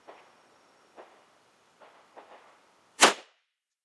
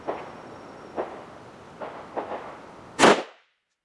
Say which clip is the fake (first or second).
first